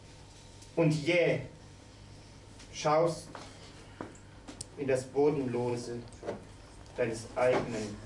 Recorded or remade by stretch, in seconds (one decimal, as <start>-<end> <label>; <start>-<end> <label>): 0.0-8.1 recorded